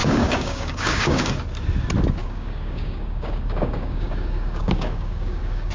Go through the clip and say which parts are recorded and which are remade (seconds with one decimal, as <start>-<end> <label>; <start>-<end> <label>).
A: 0.0-1.4 remade; 1.4-2.2 recorded; 2.2-5.7 remade